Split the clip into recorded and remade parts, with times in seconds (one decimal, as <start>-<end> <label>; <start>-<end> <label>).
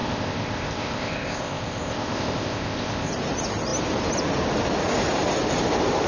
0.0-3.1 remade; 3.1-6.1 recorded